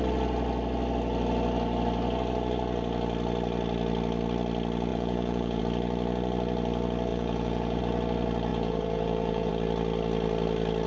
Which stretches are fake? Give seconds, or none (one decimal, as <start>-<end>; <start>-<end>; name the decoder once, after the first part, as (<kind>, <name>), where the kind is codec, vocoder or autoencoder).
4.9-5.6 (vocoder, Vocos); 7.1-7.8; 8.5-9.5